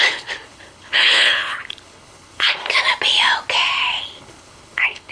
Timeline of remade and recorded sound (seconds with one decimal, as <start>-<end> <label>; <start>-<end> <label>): 0.0-2.6 remade; 2.6-4.0 recorded; 4.0-5.1 remade